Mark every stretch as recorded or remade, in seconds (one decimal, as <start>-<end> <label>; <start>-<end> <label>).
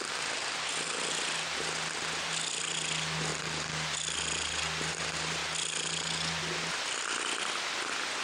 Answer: 0.0-8.2 recorded